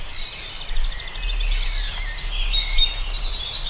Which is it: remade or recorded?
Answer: recorded